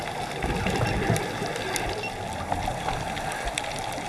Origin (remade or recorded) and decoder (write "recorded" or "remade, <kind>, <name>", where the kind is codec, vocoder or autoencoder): recorded